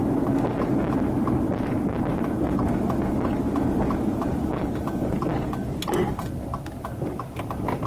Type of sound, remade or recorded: recorded